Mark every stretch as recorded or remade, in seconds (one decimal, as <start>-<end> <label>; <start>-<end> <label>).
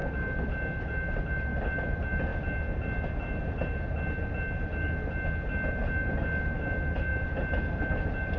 0.0-8.4 recorded